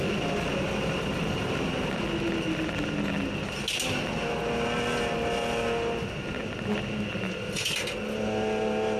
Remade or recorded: recorded